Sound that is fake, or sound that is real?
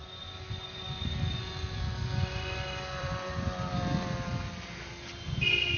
fake